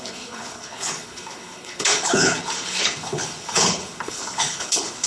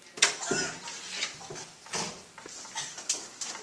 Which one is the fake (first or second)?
first